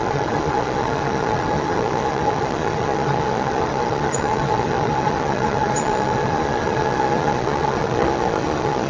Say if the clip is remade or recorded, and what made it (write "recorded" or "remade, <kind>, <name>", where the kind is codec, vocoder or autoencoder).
remade, vocoder, Vocos